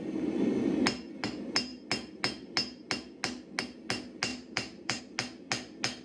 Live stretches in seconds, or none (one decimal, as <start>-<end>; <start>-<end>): 0.0-4.3; 5.0-6.0